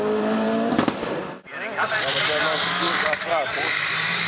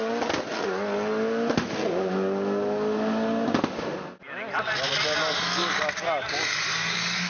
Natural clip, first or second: second